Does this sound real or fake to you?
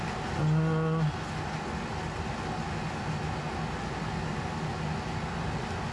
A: real